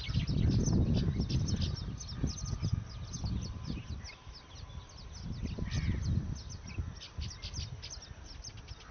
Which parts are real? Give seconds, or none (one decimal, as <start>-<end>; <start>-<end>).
0.0-8.9